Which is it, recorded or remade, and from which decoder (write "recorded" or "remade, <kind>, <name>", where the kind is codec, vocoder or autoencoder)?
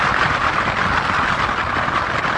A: recorded